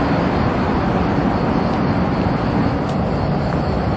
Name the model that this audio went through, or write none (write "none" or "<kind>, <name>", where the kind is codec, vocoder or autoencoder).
none